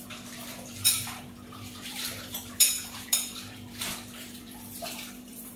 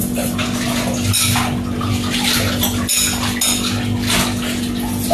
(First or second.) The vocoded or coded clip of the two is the first